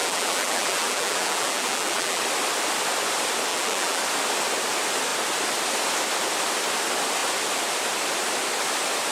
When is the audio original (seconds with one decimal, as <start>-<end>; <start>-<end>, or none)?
2.2-3.5; 4.0-9.1